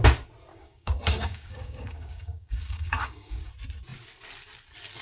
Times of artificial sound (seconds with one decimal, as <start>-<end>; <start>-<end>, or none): 0.5-3.5